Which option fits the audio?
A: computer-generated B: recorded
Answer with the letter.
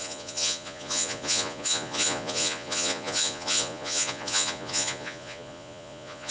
A